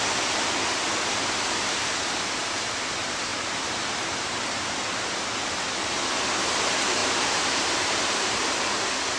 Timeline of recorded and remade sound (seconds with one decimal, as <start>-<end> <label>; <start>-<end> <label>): 0.0-3.3 recorded; 3.3-4.7 remade; 4.7-7.0 recorded; 7.0-8.6 remade; 8.6-9.2 recorded